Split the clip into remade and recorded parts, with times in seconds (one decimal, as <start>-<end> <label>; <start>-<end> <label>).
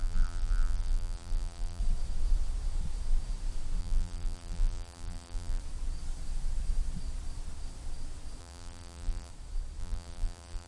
0.0-1.8 remade; 1.8-3.8 recorded; 3.8-5.6 remade; 5.6-8.4 recorded; 8.4-9.3 remade; 9.3-9.8 recorded; 9.8-10.7 remade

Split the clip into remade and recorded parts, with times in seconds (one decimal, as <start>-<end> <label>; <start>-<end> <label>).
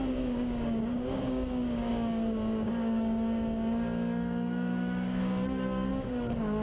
0.0-6.6 remade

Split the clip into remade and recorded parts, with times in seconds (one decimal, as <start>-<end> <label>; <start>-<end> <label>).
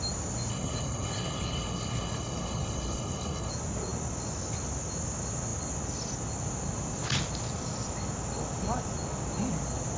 0.0-0.5 recorded; 0.5-3.5 remade; 3.5-10.0 recorded